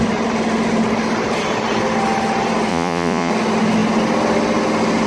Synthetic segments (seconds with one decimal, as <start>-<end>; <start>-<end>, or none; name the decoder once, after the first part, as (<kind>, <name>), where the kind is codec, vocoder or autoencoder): 2.7-3.3 (vocoder, Vocos)